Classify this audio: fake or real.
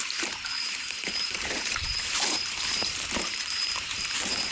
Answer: fake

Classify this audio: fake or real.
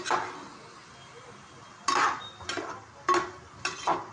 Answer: real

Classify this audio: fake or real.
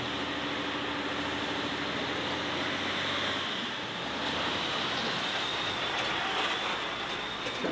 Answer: real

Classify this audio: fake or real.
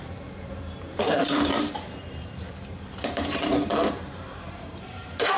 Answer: fake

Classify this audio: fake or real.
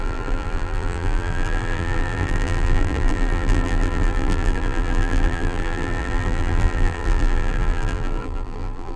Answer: fake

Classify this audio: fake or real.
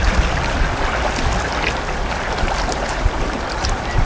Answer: fake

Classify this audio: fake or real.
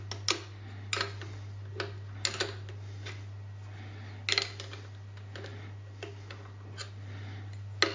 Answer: real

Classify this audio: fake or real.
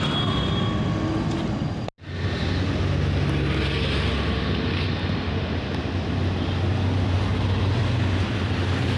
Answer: real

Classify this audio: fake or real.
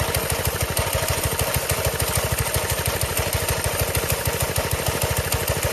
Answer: real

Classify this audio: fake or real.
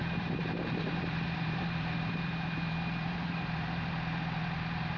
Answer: fake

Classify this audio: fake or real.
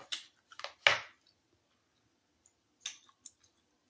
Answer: real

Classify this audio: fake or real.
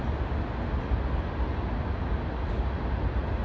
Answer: real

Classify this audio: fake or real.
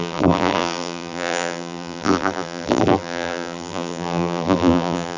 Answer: fake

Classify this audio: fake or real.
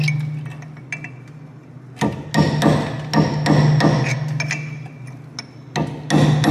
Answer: real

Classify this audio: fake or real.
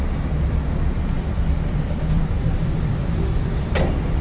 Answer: fake